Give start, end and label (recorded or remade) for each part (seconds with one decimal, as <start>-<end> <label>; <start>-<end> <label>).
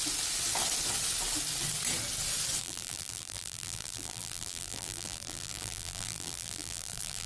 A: 0.0-2.6 recorded; 2.6-7.3 remade